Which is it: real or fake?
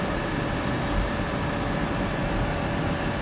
real